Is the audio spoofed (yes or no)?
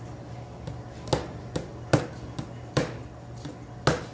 no